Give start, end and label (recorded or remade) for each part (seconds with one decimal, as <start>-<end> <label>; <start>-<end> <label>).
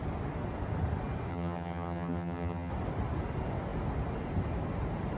0.0-1.3 recorded; 1.3-2.7 remade; 2.7-5.2 recorded